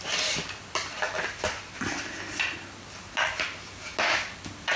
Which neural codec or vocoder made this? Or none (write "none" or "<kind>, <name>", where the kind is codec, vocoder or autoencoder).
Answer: none